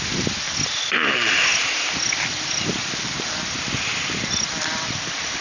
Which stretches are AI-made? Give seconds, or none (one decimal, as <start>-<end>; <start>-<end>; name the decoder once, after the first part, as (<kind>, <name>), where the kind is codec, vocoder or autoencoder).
none